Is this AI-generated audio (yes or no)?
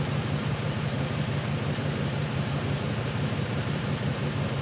yes